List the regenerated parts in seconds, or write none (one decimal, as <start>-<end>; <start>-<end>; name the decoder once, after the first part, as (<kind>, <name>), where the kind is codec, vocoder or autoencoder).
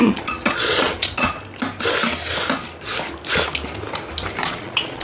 0.0-1.4 (vocoder, Vocos); 4.4-5.0